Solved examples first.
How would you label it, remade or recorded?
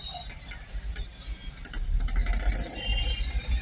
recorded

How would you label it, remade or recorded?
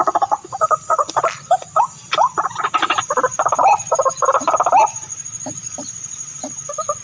recorded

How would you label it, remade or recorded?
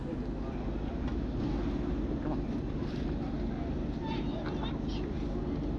recorded